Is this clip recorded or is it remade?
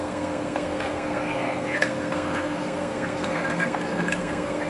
remade